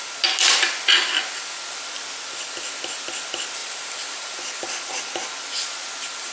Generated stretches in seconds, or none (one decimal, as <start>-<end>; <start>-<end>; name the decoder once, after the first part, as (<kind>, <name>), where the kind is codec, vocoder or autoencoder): 3.6-4.9 (vocoder, BigVGAN v2)